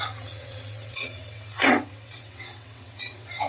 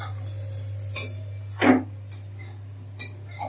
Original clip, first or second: second